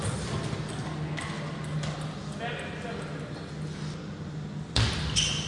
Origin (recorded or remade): recorded